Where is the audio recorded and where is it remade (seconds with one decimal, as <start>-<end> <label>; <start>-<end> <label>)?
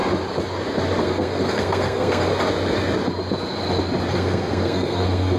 0.0-1.0 recorded; 1.0-2.3 remade; 2.3-4.1 recorded; 4.1-5.4 remade